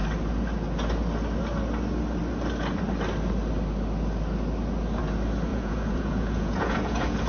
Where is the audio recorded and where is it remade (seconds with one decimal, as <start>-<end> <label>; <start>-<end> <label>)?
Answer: 0.0-5.5 recorded; 5.5-7.3 remade